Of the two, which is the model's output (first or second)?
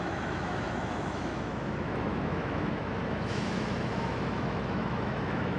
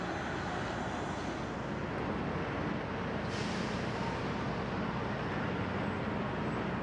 first